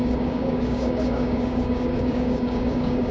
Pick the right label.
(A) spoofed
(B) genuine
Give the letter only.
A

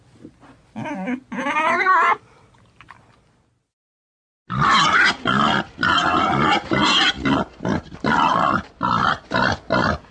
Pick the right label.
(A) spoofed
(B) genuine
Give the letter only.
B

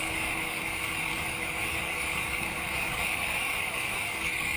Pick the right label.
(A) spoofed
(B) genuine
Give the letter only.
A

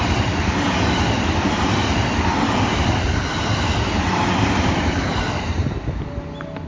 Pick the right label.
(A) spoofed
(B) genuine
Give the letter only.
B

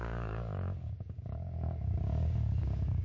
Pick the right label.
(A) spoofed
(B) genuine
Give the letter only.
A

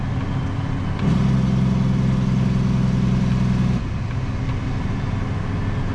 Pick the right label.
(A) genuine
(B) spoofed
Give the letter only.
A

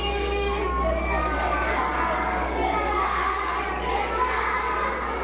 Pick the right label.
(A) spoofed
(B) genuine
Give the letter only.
A